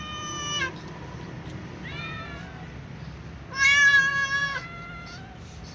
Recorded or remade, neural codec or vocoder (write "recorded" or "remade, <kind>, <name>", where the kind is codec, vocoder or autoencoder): remade, vocoder, BigVGAN v2